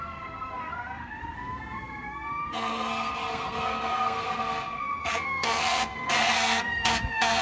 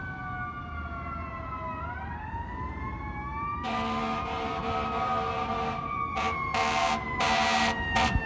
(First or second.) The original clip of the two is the second